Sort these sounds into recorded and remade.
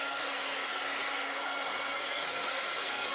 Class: remade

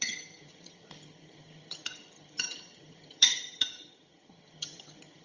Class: remade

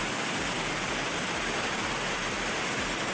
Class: remade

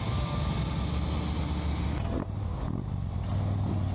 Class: recorded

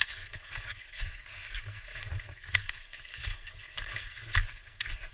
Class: remade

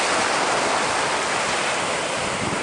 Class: recorded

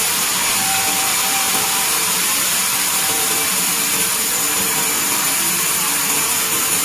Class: remade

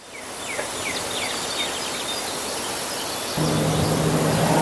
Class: recorded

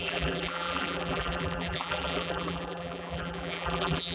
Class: remade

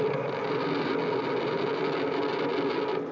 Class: recorded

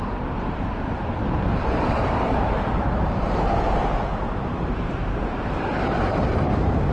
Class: remade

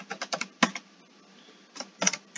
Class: recorded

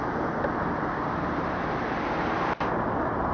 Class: recorded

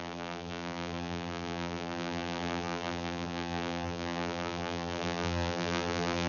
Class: remade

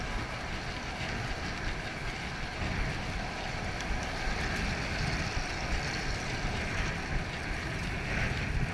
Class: recorded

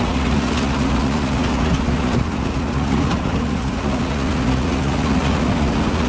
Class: remade